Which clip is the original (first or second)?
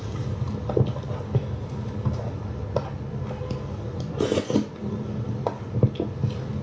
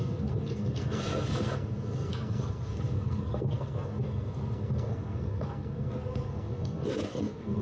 first